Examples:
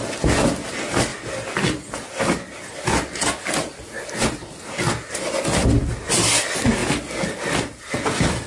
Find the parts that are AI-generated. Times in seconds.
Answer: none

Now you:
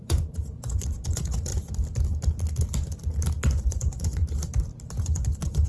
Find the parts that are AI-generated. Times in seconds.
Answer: 0.0-1.5; 3.6-4.2; 5.0-5.7